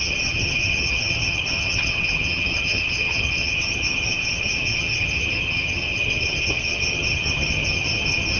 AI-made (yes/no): yes